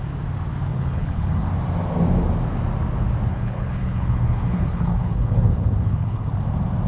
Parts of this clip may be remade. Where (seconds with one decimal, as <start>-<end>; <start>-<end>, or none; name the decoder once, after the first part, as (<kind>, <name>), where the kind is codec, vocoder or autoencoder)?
0.7-1.5 (codec, HILCodec); 3.3-6.3